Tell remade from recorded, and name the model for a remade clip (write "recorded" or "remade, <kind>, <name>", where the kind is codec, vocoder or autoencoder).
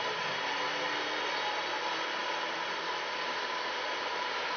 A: recorded